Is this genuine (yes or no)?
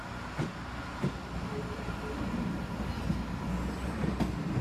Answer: yes